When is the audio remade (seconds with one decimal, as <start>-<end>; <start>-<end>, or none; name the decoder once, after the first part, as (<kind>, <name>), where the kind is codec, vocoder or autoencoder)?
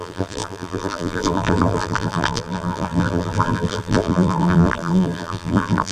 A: 0.0-5.9 (vocoder, BigVGAN v2)